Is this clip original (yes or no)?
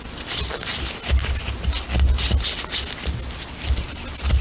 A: yes